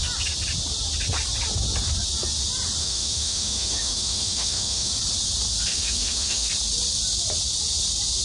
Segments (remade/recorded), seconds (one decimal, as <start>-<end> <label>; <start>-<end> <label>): 0.0-2.8 recorded; 2.8-4.9 remade; 4.9-5.7 recorded; 5.7-6.5 remade; 6.5-8.2 recorded